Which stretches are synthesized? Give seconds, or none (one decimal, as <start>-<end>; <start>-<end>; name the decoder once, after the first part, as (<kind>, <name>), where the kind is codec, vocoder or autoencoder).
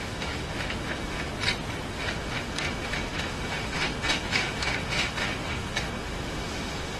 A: 0.0-1.3 (autoencoder, DAC-VAE); 1.9-7.0